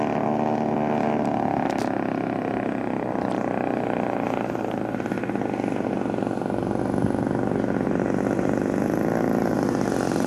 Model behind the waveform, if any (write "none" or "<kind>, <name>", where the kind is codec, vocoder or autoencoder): none